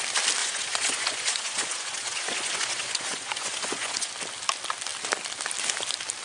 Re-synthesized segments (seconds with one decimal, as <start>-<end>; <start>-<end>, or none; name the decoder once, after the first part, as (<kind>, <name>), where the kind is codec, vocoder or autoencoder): 0.4-4.1 (vocoder, Vocos)